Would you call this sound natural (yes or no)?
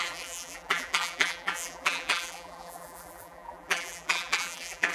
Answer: no